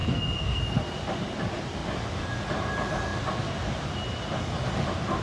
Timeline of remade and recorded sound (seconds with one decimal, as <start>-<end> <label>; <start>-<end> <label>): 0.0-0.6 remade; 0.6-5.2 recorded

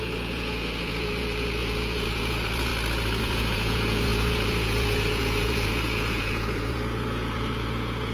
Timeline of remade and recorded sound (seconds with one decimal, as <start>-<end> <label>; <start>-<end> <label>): 0.0-2.7 remade; 2.7-3.2 recorded; 3.2-8.1 remade

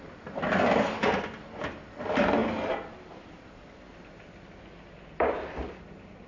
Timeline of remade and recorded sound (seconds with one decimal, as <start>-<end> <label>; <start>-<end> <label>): 0.0-6.3 recorded

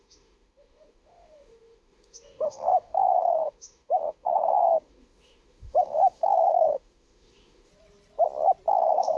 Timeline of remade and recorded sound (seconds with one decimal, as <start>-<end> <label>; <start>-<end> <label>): 0.0-7.7 remade; 7.7-8.7 recorded; 8.7-9.2 remade